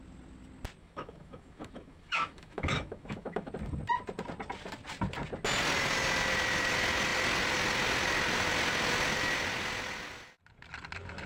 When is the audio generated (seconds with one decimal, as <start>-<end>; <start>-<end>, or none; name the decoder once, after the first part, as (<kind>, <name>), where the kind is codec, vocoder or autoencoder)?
0.8-3.5 (autoencoder, DAC-VAE)